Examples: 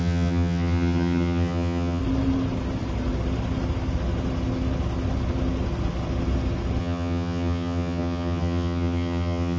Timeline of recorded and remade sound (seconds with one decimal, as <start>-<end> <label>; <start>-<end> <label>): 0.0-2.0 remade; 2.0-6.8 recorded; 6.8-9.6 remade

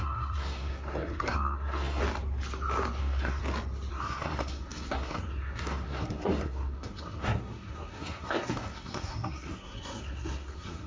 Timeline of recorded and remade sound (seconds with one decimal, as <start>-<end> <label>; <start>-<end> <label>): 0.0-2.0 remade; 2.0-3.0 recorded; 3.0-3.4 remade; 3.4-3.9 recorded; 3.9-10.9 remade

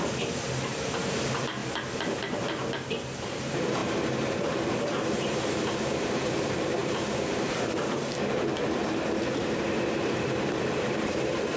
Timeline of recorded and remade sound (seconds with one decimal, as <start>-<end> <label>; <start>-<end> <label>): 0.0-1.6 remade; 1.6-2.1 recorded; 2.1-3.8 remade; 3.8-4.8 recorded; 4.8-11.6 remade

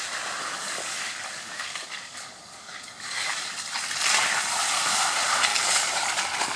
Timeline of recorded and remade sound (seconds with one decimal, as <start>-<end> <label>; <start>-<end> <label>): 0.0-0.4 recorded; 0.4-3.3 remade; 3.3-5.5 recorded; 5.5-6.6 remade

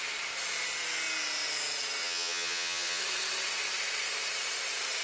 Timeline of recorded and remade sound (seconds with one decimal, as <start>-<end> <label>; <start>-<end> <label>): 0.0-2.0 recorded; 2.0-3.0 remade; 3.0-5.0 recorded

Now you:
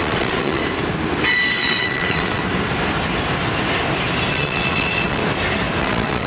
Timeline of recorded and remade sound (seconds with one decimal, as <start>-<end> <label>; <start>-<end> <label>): 0.0-0.6 remade; 0.6-1.5 recorded; 1.5-2.4 remade; 2.4-4.3 recorded; 4.3-5.2 remade; 5.2-5.8 recorded; 5.8-6.3 remade

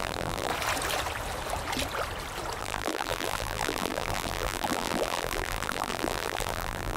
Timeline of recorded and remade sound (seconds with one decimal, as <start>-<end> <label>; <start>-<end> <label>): 0.0-0.5 remade; 0.5-2.6 recorded; 2.6-7.0 remade

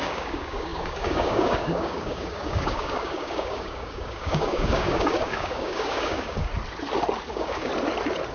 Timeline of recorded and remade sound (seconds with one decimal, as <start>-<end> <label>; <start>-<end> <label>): 0.0-6.5 remade; 6.5-7.3 recorded; 7.3-7.7 remade; 7.7-8.3 recorded